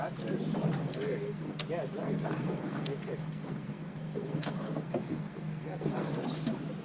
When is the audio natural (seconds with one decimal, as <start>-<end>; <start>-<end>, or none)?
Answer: 0.0-0.8; 1.6-2.0; 6.1-6.8

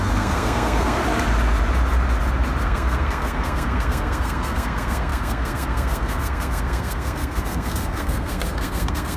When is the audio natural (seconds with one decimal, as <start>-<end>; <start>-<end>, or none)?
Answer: 1.0-2.6

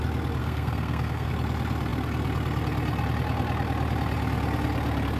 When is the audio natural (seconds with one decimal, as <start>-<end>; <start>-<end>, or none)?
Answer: 0.0-0.4; 1.3-5.2

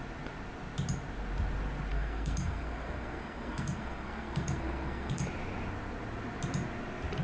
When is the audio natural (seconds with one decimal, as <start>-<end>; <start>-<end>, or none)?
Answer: 0.0-1.9; 5.2-7.2

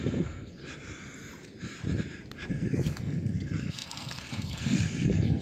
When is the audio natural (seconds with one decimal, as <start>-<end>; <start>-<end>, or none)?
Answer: 0.6-2.5

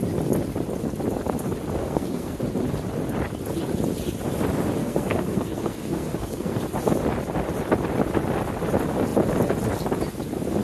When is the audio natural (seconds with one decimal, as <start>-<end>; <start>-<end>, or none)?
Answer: 0.0-1.8; 2.4-4.8; 6.6-10.6